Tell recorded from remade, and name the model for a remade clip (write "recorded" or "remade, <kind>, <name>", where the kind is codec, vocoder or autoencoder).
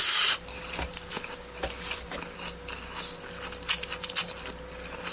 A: recorded